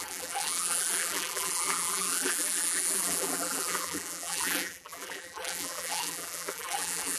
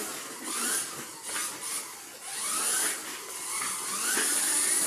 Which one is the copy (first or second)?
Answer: first